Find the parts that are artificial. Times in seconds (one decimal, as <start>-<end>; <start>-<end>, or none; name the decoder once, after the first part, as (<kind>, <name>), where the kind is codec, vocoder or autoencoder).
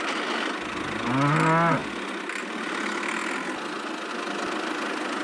none